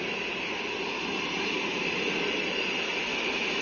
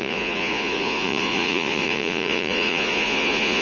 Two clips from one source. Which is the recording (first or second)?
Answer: first